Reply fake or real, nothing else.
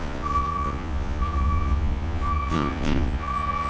fake